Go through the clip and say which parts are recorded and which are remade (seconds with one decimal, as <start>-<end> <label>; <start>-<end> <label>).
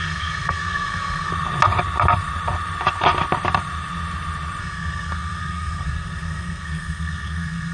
0.0-1.3 remade; 1.3-4.6 recorded; 4.6-7.7 remade